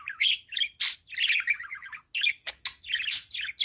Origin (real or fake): real